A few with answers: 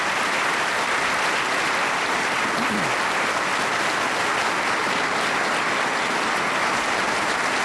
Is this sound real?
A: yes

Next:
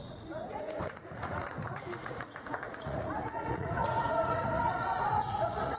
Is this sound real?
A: no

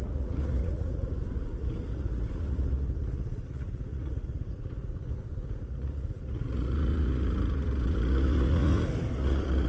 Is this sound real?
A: no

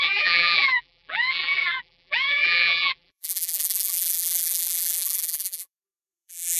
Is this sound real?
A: no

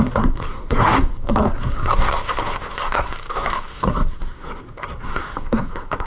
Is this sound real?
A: no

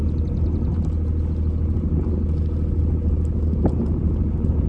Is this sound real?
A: yes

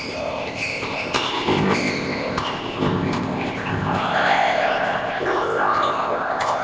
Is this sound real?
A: no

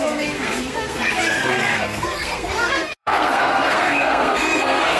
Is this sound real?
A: no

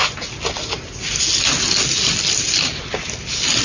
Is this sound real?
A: yes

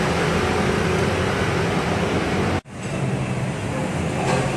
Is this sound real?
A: yes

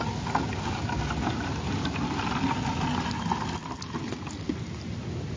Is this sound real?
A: yes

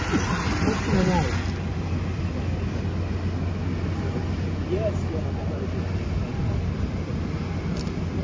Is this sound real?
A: yes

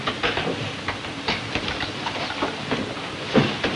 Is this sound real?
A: yes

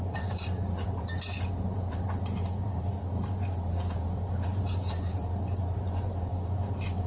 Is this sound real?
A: no